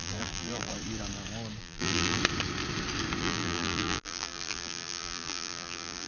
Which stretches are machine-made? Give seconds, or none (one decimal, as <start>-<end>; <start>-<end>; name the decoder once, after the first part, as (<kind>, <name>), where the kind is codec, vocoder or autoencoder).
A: 0.0-0.7 (vocoder, BigVGAN v2); 1.6-2.2; 3.2-6.1